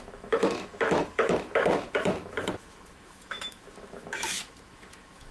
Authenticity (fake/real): fake